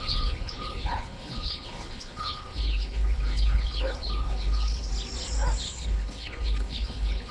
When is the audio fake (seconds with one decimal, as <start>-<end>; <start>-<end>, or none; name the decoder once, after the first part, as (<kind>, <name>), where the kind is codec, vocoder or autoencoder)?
0.0-4.9 (codec, HILCodec); 5.6-7.3